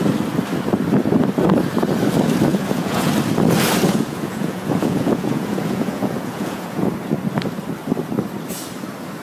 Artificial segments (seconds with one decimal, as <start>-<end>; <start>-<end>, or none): 2.5-3.1; 3.9-6.9

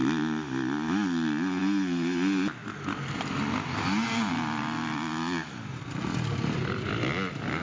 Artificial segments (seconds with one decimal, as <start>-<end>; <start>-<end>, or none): none

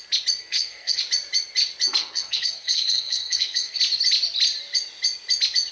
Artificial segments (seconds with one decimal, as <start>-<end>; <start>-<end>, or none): 0.4-1.0; 2.0-3.8

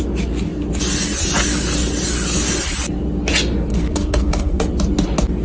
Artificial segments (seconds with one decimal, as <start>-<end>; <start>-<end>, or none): 3.7-4.6

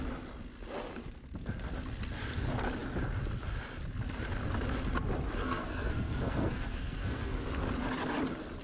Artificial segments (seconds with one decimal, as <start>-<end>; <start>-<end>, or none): 5.4-7.4

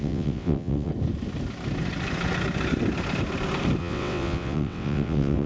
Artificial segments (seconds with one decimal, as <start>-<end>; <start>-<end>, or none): 0.0-0.9; 3.8-5.5